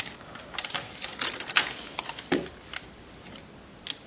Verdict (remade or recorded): recorded